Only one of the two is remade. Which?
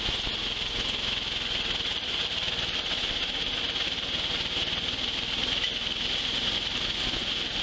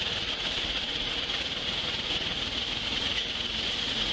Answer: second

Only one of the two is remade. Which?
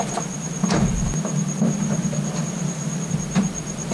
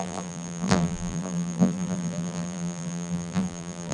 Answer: second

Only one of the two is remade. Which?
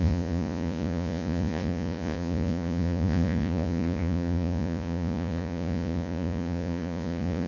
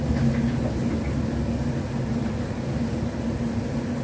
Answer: first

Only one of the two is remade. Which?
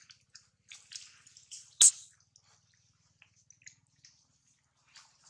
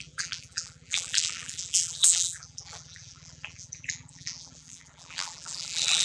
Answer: second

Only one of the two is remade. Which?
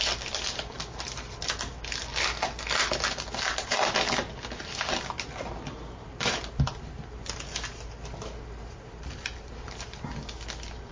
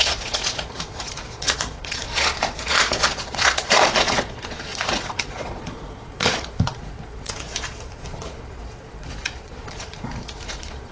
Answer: second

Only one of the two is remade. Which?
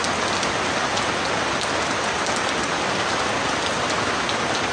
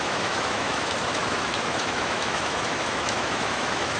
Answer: second